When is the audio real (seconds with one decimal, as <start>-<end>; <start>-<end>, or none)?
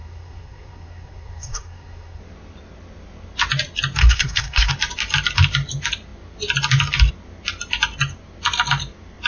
2.2-4.0; 4.7-9.3